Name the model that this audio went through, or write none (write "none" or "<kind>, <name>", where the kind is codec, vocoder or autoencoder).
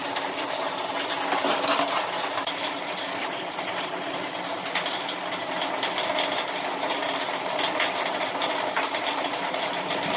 none